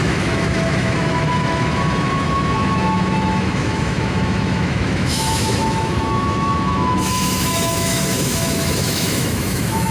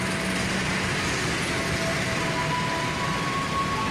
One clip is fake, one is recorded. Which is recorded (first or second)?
second